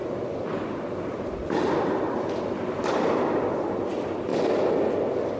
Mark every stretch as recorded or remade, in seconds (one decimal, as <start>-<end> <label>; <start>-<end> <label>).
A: 0.0-2.1 remade; 2.1-5.4 recorded